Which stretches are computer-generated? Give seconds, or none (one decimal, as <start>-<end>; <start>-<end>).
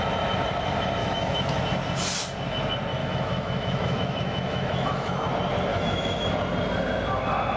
1.0-1.6; 3.0-5.3; 5.7-6.3